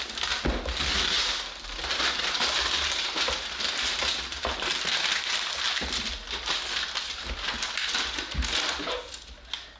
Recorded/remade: recorded